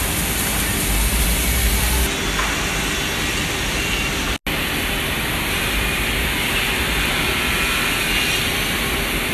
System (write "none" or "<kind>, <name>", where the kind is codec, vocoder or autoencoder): none